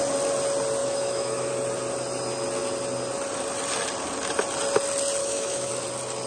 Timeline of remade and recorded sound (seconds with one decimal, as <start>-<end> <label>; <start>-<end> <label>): 0.0-0.8 recorded; 0.8-1.5 remade; 1.5-5.2 recorded; 5.2-5.7 remade; 5.7-6.3 recorded